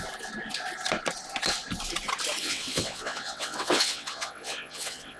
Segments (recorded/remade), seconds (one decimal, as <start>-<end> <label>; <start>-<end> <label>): 0.0-2.4 recorded; 2.4-5.2 remade